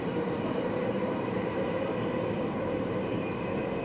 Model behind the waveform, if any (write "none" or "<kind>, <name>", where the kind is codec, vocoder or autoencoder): vocoder, BigVGAN v2